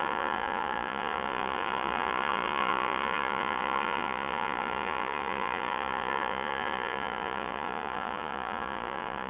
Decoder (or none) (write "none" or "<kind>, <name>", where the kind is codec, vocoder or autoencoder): vocoder, Vocos